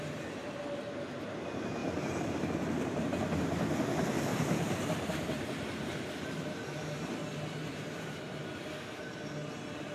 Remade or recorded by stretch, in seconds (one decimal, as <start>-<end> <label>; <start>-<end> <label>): 0.0-1.8 recorded; 1.8-3.0 remade; 3.0-4.3 recorded; 4.3-8.6 remade; 8.6-9.9 recorded

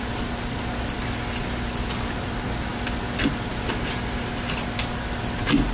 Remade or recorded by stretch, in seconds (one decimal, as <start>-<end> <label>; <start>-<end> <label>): 0.0-5.7 recorded

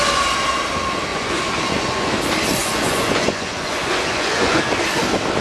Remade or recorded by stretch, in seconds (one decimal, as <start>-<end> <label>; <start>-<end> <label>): 0.0-1.1 recorded; 1.1-2.1 remade; 2.1-2.6 recorded; 2.6-4.6 remade; 4.6-5.4 recorded